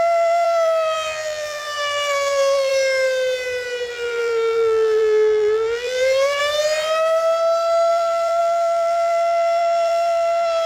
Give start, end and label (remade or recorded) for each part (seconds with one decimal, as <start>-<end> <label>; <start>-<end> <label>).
0.0-2.7 remade; 2.7-3.9 recorded; 3.9-6.4 remade; 6.4-7.9 recorded; 7.9-10.7 remade